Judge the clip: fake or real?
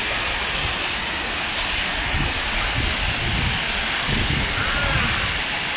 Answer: real